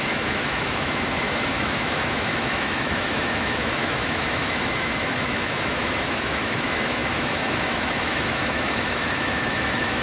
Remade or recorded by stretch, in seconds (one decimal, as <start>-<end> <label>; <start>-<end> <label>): 0.0-10.0 remade